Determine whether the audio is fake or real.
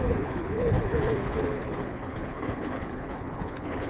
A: fake